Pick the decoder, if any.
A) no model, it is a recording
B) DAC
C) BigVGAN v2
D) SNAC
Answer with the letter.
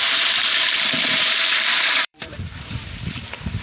C